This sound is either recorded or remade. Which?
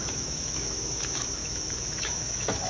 remade